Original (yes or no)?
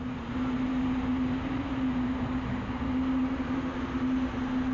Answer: yes